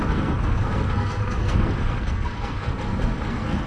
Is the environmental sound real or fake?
fake